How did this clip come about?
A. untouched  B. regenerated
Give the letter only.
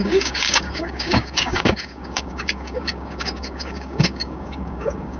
B